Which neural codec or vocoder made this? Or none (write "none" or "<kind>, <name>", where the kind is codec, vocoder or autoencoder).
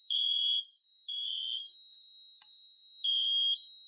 codec, DAC